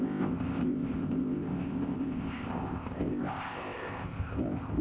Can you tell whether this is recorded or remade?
remade